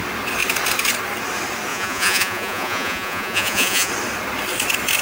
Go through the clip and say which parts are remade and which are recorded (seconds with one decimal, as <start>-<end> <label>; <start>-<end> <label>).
0.0-1.7 recorded; 1.7-3.9 remade; 3.9-5.0 recorded